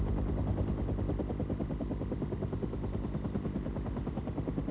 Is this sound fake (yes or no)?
no